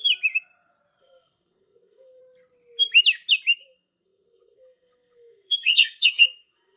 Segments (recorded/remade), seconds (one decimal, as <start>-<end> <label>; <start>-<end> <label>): 0.0-1.0 recorded; 1.0-2.2 remade; 2.2-3.6 recorded; 3.6-6.8 remade